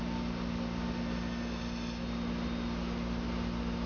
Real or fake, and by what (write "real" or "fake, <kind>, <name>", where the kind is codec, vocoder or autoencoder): real